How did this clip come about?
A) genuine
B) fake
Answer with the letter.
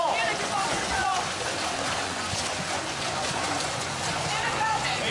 B